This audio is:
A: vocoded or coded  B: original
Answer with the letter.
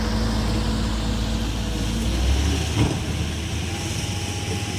B